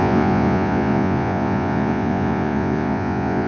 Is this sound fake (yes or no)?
yes